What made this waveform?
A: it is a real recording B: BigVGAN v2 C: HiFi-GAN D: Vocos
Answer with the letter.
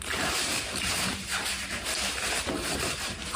B